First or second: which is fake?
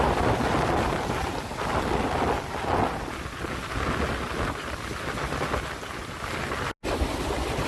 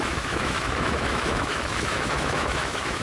second